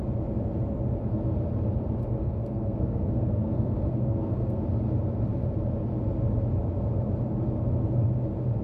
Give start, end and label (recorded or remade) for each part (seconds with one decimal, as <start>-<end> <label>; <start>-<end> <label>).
0.0-2.2 recorded; 2.2-4.6 remade; 4.6-8.6 recorded